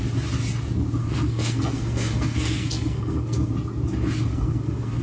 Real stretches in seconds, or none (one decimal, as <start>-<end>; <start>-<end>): 0.0-1.0; 3.5-4.3